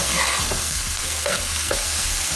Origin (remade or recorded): remade